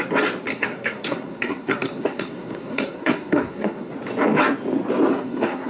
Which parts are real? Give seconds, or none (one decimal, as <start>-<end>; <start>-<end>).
0.0-0.5; 3.9-5.1